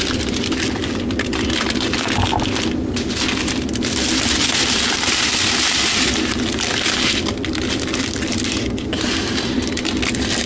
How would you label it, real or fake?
real